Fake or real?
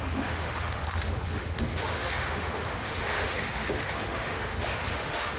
fake